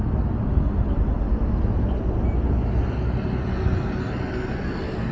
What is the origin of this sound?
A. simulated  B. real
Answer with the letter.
B